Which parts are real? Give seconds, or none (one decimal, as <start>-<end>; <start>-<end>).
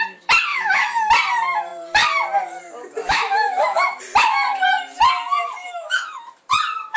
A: 0.0-0.5; 1.1-3.0; 4.0-5.6; 6.2-7.0